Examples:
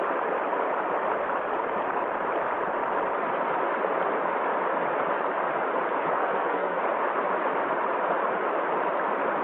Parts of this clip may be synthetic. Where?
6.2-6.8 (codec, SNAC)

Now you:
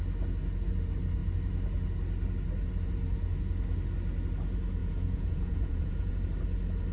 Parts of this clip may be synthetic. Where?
4.8-6.1 (vocoder, Vocos)

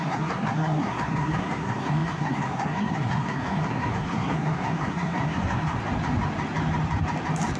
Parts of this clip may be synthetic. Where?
0.0-5.8 (codec, SNAC)

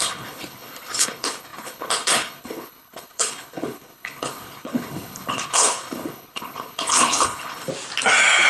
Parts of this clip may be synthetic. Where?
0.0-7.7 (codec, HILCodec)

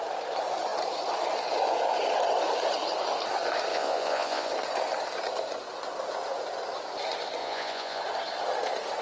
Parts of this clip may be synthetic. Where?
3.7-4.5 (vocoder, Vocos); 7.4-8.0

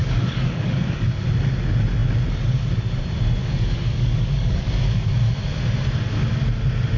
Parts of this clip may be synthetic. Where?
0.0-1.2 (codec, DAC); 3.4-5.1

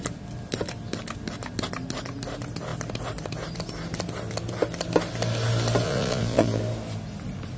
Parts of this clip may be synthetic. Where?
5.8-6.6 (vocoder, Vocos)

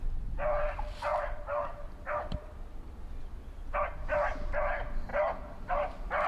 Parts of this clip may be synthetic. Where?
1.1-3.0 (vocoder, BigVGAN v2)